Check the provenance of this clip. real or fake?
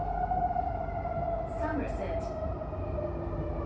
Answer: real